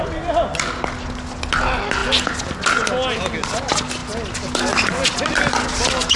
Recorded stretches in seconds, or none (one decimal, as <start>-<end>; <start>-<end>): 0.0-6.2